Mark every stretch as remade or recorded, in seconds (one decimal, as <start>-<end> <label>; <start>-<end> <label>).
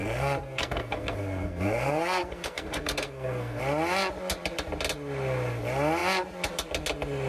0.0-3.6 remade; 3.6-7.3 recorded